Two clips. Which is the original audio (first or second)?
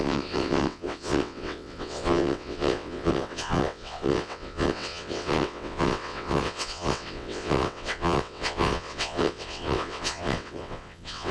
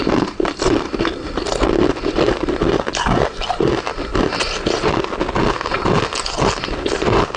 second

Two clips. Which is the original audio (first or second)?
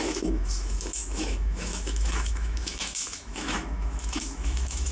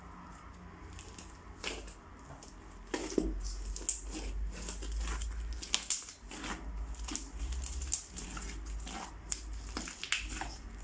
second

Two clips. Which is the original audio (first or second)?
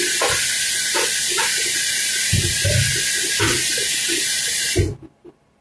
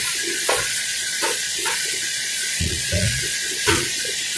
first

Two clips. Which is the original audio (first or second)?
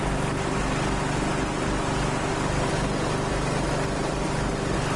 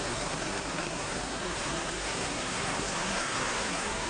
first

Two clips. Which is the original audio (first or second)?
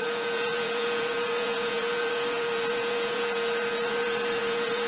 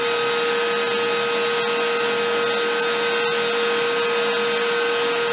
second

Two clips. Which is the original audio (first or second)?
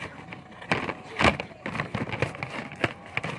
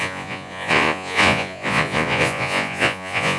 first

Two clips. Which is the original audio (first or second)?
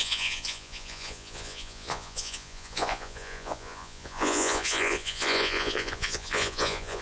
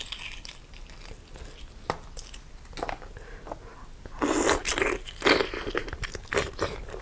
second